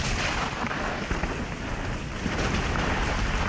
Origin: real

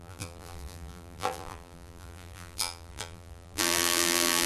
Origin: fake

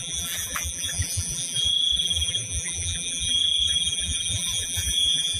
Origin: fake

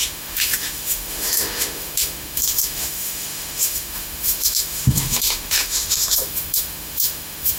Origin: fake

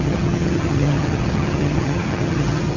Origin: fake